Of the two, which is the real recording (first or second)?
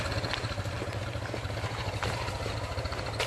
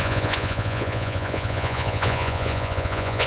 first